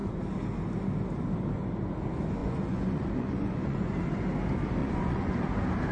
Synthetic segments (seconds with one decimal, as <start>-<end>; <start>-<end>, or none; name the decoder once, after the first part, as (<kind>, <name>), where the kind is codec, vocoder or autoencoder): 2.4-3.9 (vocoder, Vocos); 4.8-5.4